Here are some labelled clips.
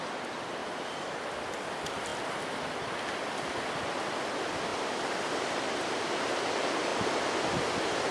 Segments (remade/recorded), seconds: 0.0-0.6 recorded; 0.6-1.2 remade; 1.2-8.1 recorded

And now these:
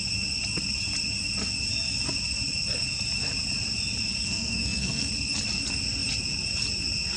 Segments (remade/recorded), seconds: 0.0-4.2 recorded; 4.2-5.1 remade; 5.1-7.2 recorded